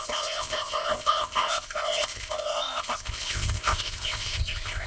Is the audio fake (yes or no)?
yes